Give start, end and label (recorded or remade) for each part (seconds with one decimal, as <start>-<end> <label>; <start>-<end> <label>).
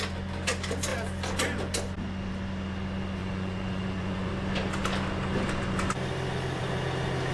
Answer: 0.0-3.2 recorded; 3.2-4.3 remade; 4.3-7.3 recorded